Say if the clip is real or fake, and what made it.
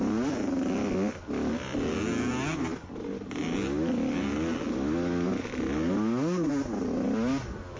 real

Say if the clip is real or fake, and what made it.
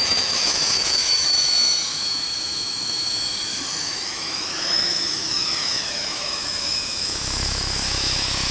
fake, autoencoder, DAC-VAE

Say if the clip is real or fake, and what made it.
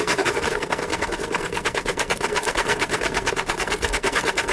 fake, codec, SNAC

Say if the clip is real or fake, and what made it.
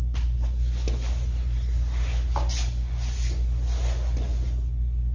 real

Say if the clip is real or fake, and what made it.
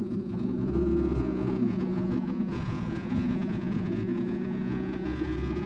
fake, vocoder, Vocos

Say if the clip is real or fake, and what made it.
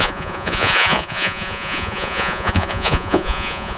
fake, vocoder, Vocos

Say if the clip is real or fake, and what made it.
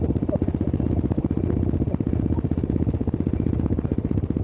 real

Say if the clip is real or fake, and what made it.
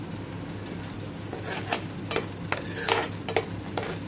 real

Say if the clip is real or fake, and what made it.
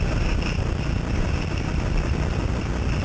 real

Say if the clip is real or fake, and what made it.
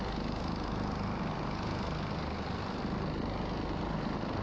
real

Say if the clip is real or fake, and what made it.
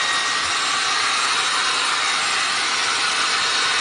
real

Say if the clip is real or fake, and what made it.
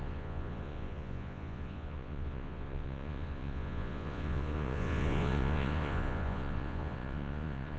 fake, vocoder, Vocos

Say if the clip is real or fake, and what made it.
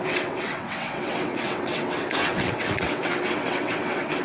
fake, vocoder, WaveNeXt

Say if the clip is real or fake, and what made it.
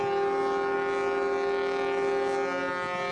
real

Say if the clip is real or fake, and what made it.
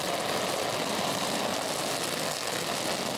real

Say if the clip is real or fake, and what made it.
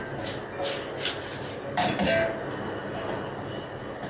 real